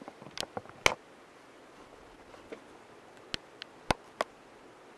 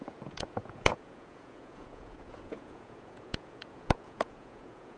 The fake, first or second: second